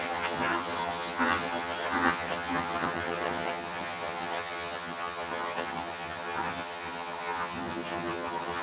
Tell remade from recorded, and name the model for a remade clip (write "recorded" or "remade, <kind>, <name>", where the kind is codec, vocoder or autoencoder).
remade, vocoder, HiFi-GAN